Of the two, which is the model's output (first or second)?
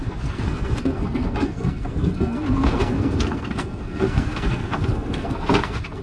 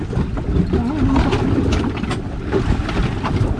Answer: first